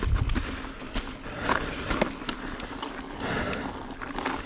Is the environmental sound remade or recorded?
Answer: recorded